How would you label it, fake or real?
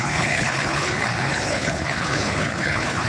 fake